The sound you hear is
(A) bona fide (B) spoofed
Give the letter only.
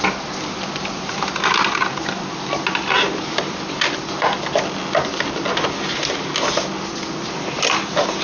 A